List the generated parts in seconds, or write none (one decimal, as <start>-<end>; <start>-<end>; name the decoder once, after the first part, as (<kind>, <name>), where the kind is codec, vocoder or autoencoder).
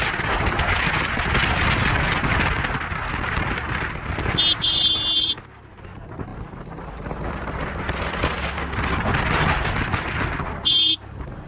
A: none